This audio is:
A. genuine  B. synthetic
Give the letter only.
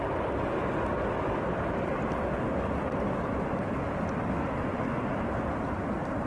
A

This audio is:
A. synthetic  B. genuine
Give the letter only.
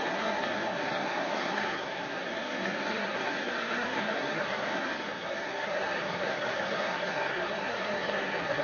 A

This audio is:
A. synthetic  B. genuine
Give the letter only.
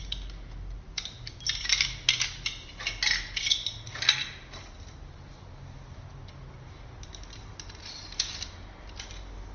B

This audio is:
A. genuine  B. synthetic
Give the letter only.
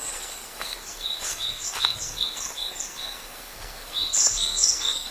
B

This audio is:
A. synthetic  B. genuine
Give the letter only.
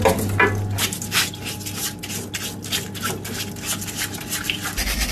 B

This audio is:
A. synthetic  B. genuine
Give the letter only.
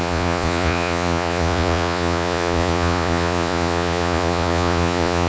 A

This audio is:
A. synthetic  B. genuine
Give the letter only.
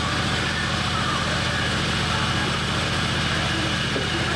B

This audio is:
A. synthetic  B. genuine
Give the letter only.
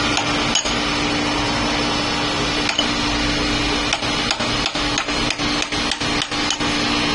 B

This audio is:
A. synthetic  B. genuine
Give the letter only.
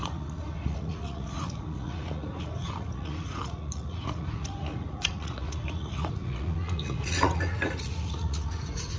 A